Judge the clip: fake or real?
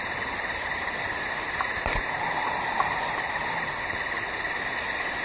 real